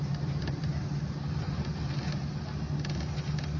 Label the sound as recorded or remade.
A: recorded